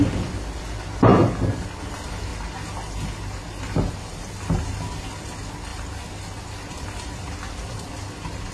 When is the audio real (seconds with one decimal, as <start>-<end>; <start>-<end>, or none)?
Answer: 0.0-8.5